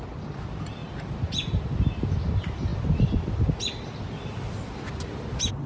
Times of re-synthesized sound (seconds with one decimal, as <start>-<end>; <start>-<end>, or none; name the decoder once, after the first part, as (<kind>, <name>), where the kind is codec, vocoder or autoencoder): none